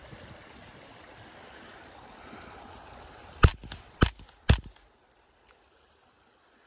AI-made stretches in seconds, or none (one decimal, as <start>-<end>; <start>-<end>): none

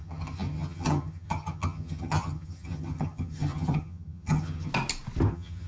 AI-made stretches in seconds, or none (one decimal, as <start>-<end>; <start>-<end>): 0.0-4.7; 5.3-5.7

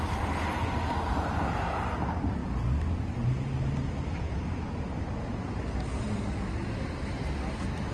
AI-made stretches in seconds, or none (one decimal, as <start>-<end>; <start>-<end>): none